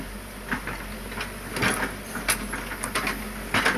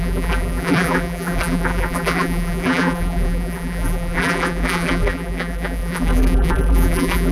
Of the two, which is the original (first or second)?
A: first